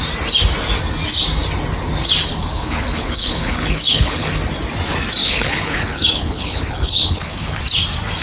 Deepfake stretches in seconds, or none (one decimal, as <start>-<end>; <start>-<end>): 2.3-4.3; 5.2-7.6